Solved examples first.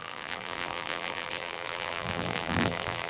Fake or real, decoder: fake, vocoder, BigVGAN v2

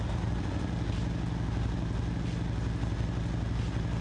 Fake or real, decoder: real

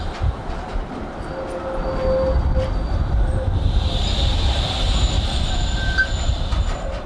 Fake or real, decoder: real